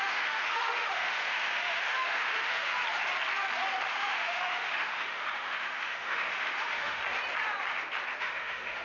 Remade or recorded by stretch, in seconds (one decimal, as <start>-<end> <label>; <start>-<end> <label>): 0.0-2.8 remade; 2.8-3.9 recorded; 3.9-7.0 remade; 7.0-8.2 recorded; 8.2-8.8 remade